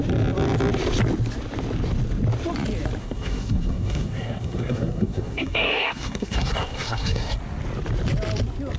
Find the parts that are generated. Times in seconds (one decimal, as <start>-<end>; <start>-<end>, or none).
3.0-7.4